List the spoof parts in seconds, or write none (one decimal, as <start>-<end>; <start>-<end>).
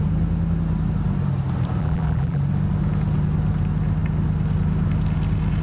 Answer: 1.8-2.4